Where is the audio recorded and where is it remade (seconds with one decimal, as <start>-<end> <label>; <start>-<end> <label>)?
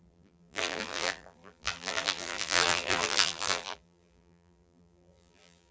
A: 0.0-5.7 remade